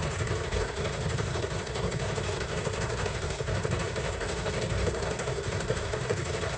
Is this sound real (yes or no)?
no